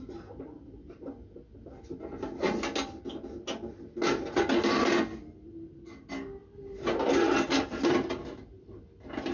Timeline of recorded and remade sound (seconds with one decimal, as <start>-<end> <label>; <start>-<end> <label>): 0.0-9.3 recorded